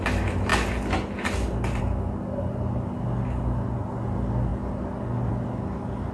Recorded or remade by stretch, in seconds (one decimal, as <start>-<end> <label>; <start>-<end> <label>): 0.0-6.1 recorded